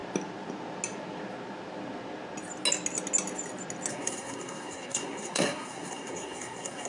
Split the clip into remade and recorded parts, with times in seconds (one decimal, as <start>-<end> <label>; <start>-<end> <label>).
0.0-3.9 recorded; 3.9-6.9 remade